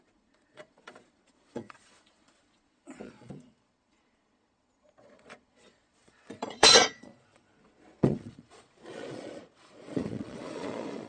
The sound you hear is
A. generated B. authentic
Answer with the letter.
A